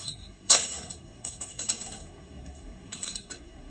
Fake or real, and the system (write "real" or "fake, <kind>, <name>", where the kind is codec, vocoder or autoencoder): fake, codec, SNAC